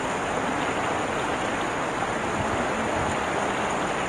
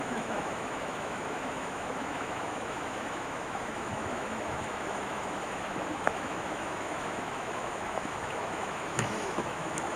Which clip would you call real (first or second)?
first